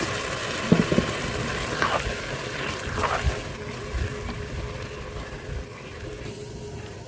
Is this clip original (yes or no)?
yes